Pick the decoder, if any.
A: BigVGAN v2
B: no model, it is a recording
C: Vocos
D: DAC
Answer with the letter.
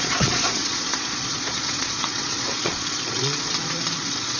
C